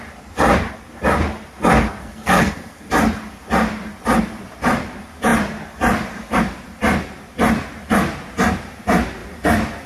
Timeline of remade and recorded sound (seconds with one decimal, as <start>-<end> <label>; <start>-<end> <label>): 0.0-2.0 recorded; 2.0-2.9 remade; 2.9-9.9 recorded